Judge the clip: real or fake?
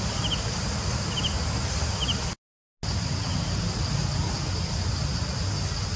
real